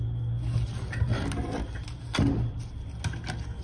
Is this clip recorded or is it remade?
recorded